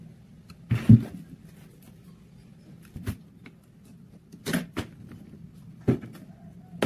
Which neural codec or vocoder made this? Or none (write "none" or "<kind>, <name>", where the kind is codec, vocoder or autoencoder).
none